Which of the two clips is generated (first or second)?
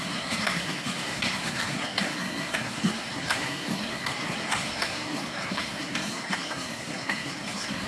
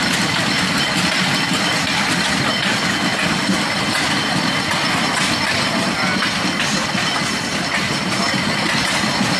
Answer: first